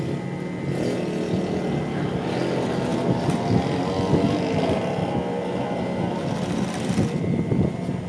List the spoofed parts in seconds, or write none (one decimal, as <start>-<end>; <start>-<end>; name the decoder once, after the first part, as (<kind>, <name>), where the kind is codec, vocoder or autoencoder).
none